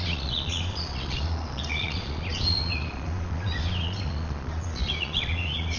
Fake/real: fake